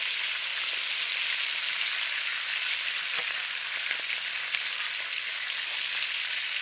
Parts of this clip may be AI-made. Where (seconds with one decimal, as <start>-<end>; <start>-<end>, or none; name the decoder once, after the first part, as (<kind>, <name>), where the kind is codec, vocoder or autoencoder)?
none